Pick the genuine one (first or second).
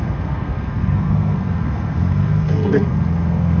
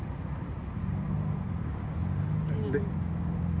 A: second